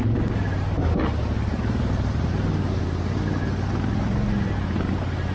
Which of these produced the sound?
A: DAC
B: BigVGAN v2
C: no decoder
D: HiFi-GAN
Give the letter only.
C